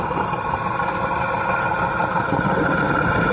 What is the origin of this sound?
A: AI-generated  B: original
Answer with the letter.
B